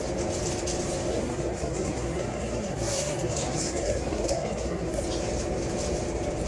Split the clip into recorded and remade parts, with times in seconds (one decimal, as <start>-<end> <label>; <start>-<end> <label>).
0.0-1.1 recorded; 1.1-5.0 remade; 5.0-6.5 recorded